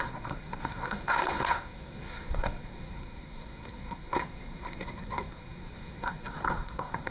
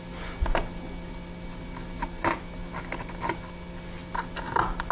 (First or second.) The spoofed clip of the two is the first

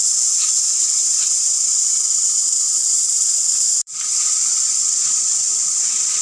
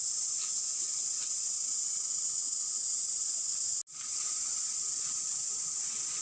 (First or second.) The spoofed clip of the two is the first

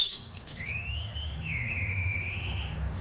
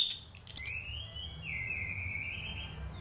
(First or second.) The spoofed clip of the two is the first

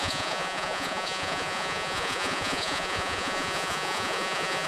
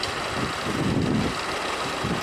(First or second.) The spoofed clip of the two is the first